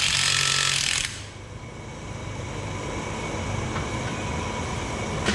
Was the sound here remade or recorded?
recorded